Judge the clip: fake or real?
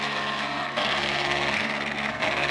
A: fake